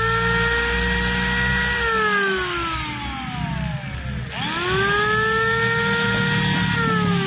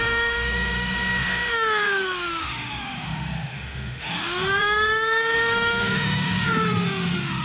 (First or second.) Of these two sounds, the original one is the first